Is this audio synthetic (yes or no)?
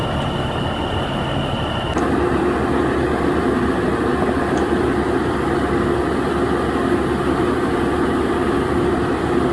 no